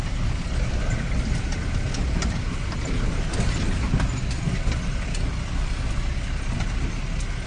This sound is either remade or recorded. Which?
recorded